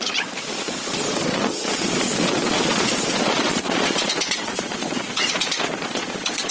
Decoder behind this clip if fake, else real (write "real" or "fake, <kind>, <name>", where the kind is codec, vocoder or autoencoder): fake, vocoder, Vocos